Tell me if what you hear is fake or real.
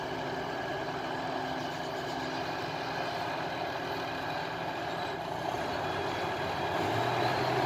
real